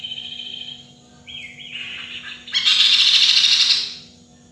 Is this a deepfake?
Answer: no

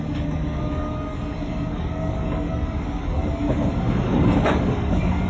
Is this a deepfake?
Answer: yes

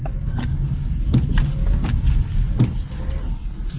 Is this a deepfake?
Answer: no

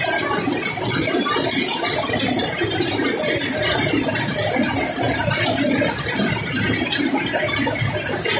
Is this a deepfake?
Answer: no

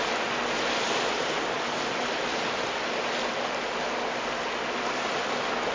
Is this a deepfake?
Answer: no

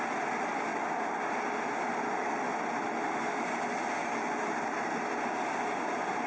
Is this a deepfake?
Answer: no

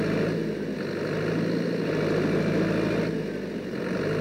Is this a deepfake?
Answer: no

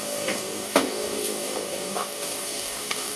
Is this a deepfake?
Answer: yes